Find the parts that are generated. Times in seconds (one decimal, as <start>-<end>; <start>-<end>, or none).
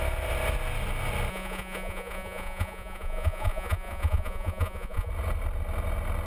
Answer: 1.3-5.1